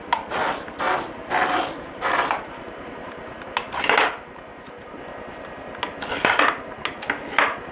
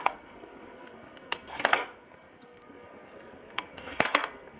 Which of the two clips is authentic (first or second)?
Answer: first